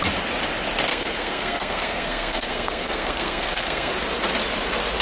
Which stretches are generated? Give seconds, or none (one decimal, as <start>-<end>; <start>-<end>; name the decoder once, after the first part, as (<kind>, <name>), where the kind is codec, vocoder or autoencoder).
0.9-3.9 (codec, SNAC)